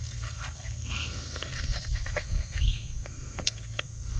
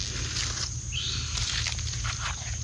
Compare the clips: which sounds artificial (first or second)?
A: first